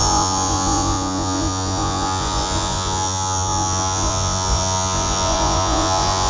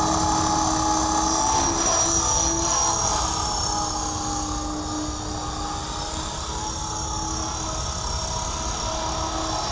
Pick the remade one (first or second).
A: first